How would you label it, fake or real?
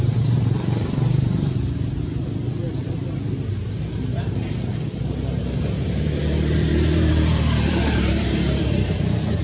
fake